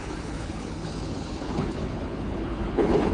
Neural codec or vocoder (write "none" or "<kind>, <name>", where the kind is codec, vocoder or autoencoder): codec, HILCodec